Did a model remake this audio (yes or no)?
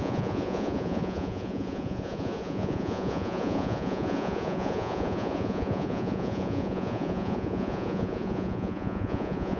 yes